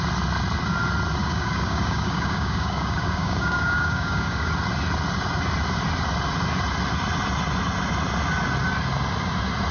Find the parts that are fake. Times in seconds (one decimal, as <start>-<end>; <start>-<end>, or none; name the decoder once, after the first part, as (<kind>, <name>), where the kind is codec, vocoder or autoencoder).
1.2-4.5 (codec, DAC)